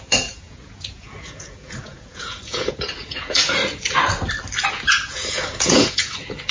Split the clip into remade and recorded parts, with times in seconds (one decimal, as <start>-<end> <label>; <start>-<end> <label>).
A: 0.0-3.6 remade; 3.6-4.7 recorded; 4.7-6.5 remade